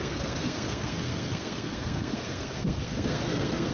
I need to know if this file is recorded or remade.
remade